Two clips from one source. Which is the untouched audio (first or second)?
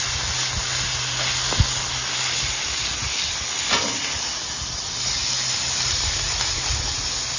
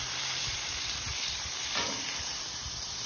first